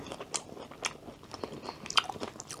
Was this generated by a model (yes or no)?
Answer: no